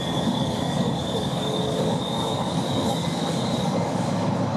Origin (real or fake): fake